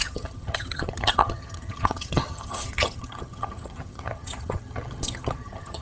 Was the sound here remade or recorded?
remade